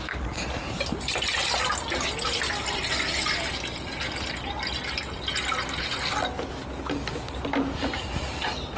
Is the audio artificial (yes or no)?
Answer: no